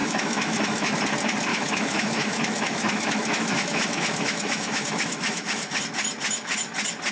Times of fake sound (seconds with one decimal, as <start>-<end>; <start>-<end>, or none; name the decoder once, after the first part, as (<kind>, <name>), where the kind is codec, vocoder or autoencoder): 0.0-1.0 (autoencoder, DAC-VAE); 1.5-5.8